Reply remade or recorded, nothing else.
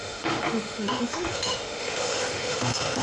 remade